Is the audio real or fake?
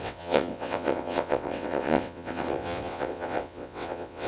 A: fake